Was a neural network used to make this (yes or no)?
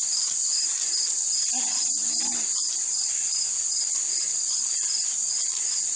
no